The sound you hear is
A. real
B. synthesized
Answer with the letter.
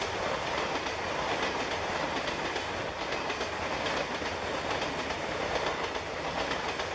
A